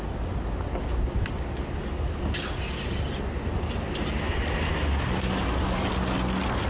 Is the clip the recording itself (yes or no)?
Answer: yes